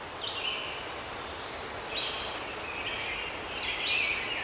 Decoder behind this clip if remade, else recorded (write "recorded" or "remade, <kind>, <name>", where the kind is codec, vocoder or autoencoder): recorded